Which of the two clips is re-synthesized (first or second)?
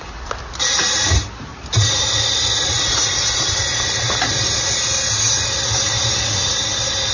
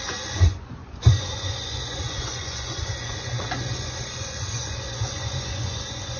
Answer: second